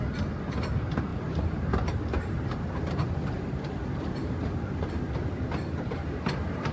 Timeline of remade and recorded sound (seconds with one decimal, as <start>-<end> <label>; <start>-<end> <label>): 0.0-1.1 recorded; 1.1-5.0 remade; 5.0-6.7 recorded